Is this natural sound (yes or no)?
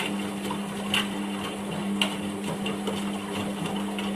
yes